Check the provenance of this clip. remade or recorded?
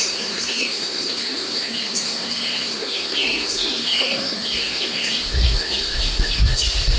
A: remade